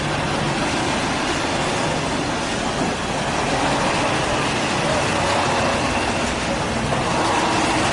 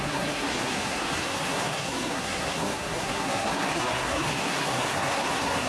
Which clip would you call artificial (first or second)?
second